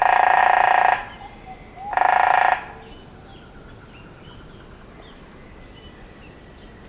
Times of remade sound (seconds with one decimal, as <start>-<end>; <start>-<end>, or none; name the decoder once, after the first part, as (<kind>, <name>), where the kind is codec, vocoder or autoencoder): none